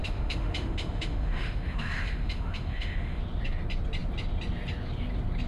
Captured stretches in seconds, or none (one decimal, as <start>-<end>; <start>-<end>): 3.2-5.5